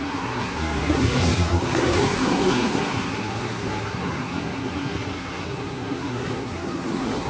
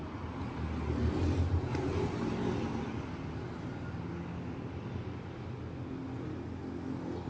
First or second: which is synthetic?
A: first